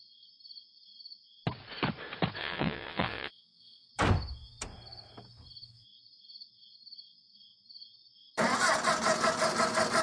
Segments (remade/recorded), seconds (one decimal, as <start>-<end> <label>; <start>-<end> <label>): 0.0-2.4 recorded; 2.4-3.9 remade; 3.9-10.0 recorded